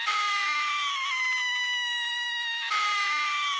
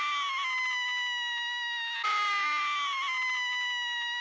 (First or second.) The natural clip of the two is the second